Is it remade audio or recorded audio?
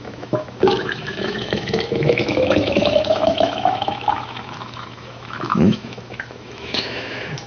remade